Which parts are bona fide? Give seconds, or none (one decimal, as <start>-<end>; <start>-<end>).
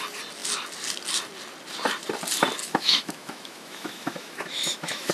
0.0-2.6